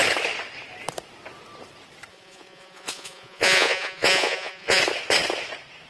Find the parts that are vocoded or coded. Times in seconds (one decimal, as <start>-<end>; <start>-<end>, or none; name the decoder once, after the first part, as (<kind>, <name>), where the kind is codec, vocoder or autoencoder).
2.1-4.8 (vocoder, Vocos)